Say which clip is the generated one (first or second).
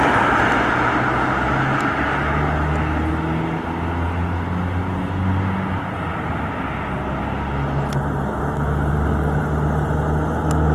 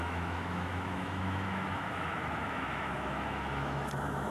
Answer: second